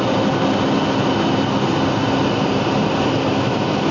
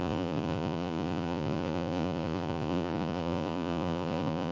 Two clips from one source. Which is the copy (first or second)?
second